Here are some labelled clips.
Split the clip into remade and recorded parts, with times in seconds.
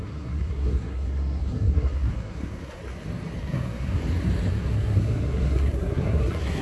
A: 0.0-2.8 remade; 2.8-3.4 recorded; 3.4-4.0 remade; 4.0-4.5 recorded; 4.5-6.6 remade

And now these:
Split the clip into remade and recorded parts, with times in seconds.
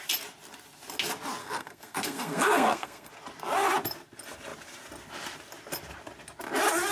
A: 0.0-1.4 recorded; 1.4-3.1 remade; 3.1-6.9 recorded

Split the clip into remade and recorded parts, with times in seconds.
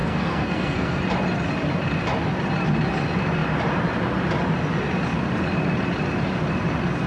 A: 0.0-1.0 remade; 1.0-7.1 recorded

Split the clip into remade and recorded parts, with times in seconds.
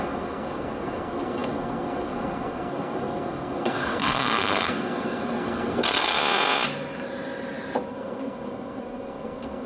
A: 0.0-6.2 remade; 6.2-7.9 recorded; 7.9-9.7 remade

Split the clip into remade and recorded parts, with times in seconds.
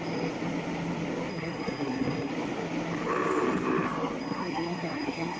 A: 0.0-1.3 recorded; 1.3-2.3 remade; 2.3-4.2 recorded; 4.2-5.4 remade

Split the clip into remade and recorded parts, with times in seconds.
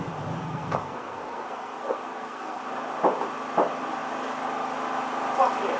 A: 0.0-0.4 recorded; 0.4-2.6 remade; 2.6-5.8 recorded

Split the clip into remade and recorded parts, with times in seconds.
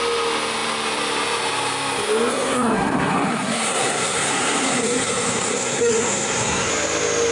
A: 0.0-2.3 recorded; 2.3-6.7 remade; 6.7-7.3 recorded